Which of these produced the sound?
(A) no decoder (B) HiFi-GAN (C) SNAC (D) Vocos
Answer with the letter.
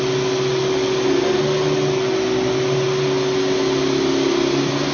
A